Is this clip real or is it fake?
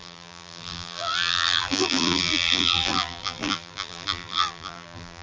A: fake